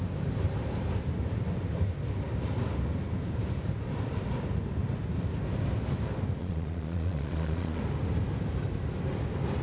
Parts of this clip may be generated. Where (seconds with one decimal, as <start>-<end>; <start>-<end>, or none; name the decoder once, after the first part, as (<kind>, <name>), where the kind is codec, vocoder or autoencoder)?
6.4-7.8 (vocoder, Vocos)

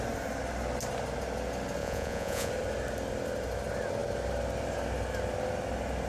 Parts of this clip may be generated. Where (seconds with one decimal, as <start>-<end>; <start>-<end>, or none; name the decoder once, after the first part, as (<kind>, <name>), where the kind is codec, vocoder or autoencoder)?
1.8-2.5 (vocoder, Vocos)

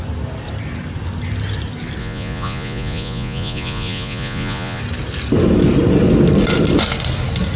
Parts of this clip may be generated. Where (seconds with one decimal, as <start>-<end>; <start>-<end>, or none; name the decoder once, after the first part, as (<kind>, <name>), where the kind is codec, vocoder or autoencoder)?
2.0-4.8 (vocoder, Vocos)